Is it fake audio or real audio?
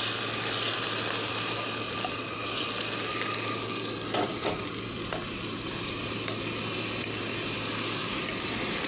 real